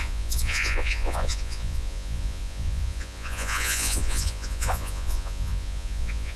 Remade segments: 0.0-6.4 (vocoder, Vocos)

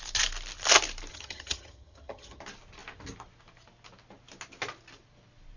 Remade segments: 1.1-2.4 (vocoder, HiFi-GAN)

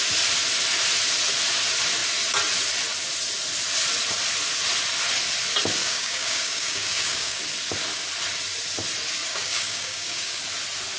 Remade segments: 5.8-7.4 (codec, DAC); 9.3-10.4

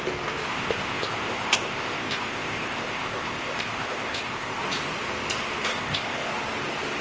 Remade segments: 0.5-4.6 (codec, ZipCodec); 5.7-6.3